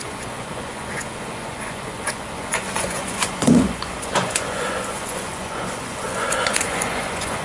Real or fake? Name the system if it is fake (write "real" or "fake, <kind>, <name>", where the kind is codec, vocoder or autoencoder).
fake, vocoder, Vocos